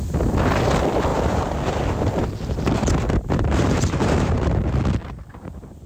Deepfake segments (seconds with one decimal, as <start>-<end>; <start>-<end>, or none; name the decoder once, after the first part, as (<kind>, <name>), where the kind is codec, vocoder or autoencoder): 1.1-4.6 (vocoder, BigVGAN v2); 5.0-5.9